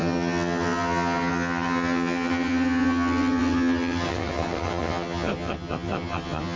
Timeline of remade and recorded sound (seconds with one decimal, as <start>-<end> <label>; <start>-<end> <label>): 0.0-6.6 remade